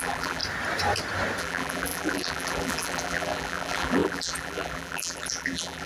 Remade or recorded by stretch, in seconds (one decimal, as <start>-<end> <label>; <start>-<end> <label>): 0.0-0.4 remade; 0.4-1.4 recorded; 1.4-5.9 remade